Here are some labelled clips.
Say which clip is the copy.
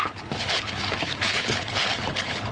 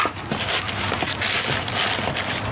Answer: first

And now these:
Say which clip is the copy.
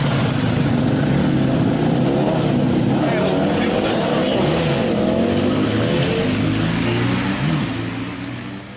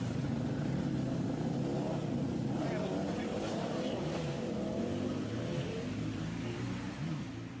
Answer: second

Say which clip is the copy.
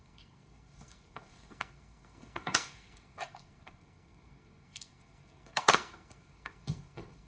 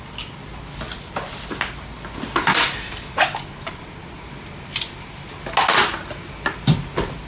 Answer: first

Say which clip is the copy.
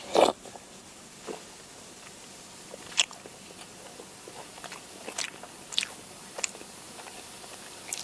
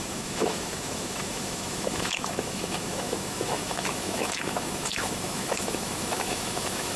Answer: second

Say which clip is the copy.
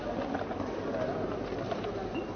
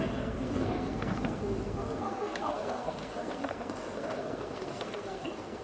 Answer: second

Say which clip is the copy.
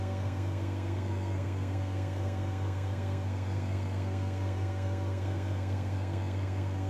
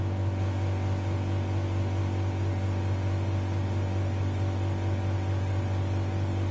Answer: first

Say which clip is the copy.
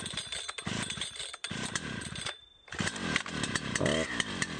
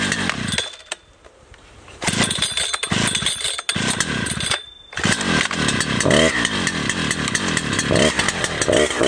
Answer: first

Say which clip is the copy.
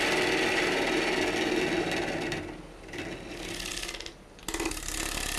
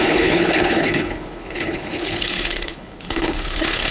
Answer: second